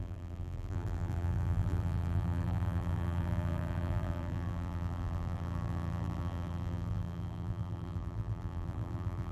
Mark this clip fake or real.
fake